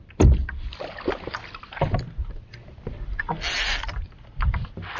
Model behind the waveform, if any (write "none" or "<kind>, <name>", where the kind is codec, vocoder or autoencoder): none